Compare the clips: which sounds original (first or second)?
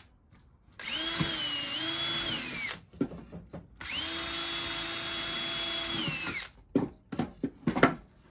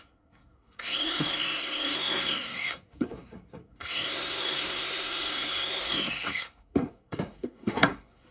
first